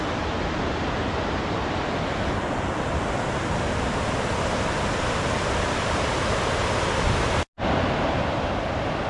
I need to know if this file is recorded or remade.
recorded